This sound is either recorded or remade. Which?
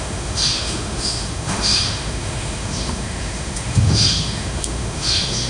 remade